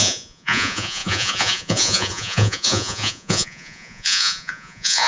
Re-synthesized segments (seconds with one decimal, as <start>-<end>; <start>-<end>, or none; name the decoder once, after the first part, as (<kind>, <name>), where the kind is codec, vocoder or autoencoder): 0.0-5.1 (vocoder, Vocos)